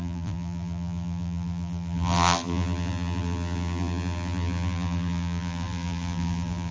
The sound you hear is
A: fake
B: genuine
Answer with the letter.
A